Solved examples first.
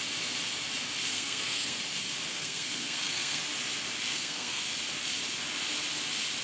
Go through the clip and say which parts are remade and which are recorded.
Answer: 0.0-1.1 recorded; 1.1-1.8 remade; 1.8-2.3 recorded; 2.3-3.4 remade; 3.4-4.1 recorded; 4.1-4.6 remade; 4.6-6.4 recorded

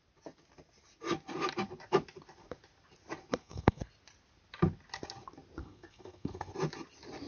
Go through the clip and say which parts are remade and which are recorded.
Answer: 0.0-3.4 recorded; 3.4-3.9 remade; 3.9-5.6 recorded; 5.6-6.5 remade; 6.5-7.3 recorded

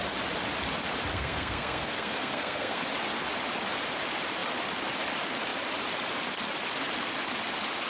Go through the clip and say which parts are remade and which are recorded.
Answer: 0.0-1.1 recorded; 1.1-2.8 remade; 2.8-7.9 recorded

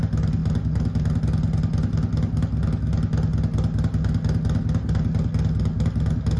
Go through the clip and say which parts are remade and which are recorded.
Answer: 0.0-6.4 recorded

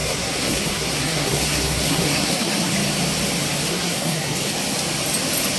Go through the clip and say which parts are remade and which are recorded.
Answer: 0.0-2.7 remade; 2.7-3.7 recorded; 3.7-4.5 remade; 4.5-5.6 recorded

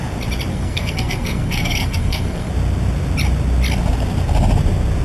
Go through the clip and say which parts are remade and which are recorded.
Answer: 0.0-0.5 recorded; 0.5-2.5 remade; 2.5-5.0 recorded

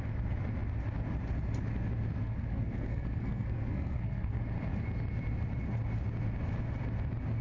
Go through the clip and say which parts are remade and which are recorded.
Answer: 0.0-2.2 recorded; 2.2-4.4 remade; 4.4-7.4 recorded